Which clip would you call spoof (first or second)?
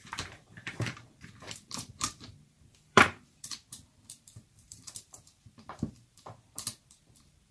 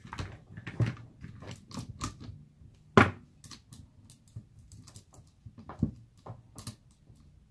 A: first